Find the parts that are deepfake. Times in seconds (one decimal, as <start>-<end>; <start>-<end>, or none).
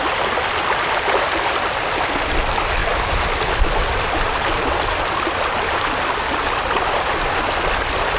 none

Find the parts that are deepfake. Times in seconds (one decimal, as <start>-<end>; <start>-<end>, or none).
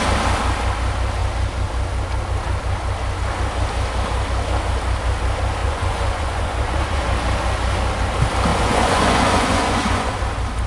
5.6-7.0; 8.5-10.1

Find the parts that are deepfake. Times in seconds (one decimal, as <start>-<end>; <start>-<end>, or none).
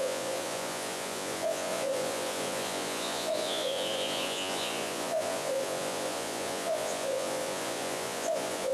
0.0-8.7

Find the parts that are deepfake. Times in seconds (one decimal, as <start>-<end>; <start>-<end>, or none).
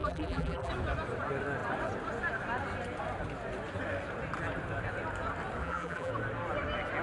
0.0-0.7; 5.6-6.1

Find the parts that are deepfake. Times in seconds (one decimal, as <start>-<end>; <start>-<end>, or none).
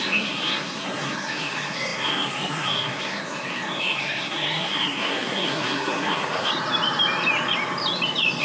0.0-6.5